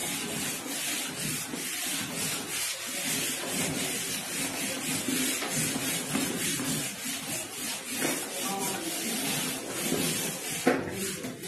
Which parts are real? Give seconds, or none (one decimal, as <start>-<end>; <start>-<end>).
0.0-11.5